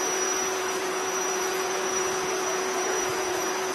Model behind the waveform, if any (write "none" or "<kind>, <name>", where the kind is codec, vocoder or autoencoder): vocoder, Vocos